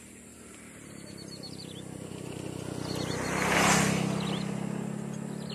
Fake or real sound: real